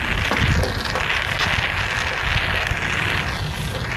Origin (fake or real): real